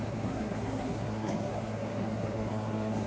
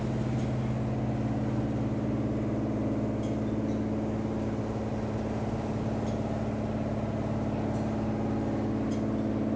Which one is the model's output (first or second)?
first